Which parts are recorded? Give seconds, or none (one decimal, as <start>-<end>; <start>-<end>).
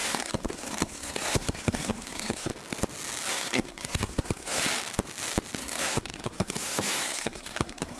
2.5-3.3; 4.6-5.6